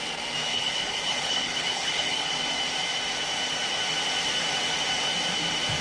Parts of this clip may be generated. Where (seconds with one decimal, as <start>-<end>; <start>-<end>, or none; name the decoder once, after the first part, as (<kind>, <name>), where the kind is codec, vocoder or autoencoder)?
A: 0.5-2.3 (codec, HILCodec)